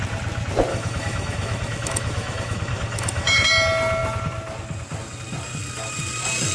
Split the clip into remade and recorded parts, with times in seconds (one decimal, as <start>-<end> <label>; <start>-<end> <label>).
0.0-0.7 recorded; 0.7-3.5 remade; 3.5-6.5 recorded